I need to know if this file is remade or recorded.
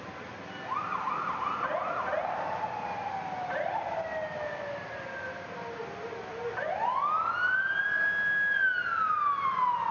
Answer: recorded